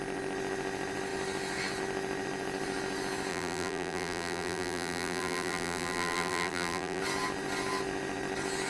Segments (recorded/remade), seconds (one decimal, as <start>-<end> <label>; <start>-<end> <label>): 0.0-3.3 recorded; 3.3-7.0 remade; 7.0-8.7 recorded